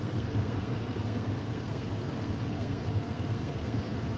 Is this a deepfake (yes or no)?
yes